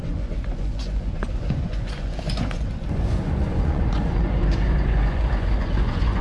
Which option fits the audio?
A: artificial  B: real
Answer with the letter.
A